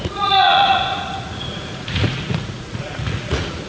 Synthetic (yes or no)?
yes